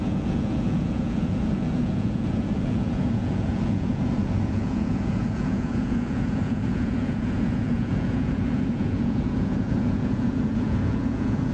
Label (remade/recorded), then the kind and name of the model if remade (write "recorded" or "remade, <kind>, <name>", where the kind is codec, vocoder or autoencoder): remade, vocoder, Vocos